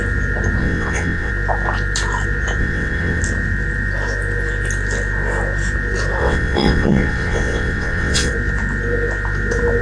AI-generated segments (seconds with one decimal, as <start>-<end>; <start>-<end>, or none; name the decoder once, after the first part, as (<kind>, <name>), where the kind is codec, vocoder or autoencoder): 0.6-1.3 (vocoder, WaveNeXt); 2.6-3.2; 6.2-8.3